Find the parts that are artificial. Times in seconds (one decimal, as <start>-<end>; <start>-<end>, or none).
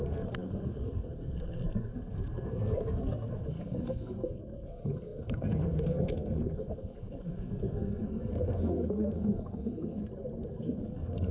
0.0-10.0; 10.5-11.3